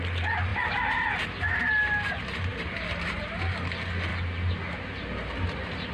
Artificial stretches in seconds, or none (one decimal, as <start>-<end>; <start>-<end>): 0.5-1.7; 2.5-3.2